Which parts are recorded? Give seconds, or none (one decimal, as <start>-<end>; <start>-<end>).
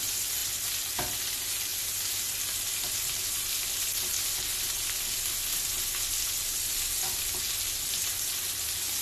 0.0-9.0